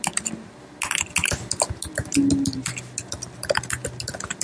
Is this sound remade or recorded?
recorded